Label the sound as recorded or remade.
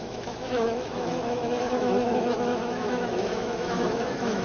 remade